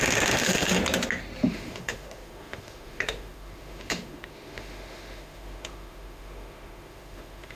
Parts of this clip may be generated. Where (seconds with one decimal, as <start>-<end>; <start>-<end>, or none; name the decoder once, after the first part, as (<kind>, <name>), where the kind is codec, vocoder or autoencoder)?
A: 0.0-0.8 (autoencoder, DAC-VAE); 1.5-7.6